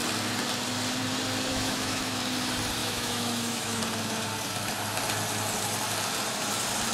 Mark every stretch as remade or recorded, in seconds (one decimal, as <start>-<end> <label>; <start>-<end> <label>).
0.0-1.5 recorded; 1.5-2.2 remade; 2.2-2.8 recorded; 2.8-3.8 remade; 3.8-6.9 recorded